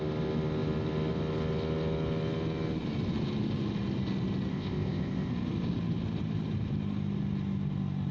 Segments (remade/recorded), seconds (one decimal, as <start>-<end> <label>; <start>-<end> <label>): 0.0-4.5 recorded; 4.5-5.3 remade; 5.3-8.1 recorded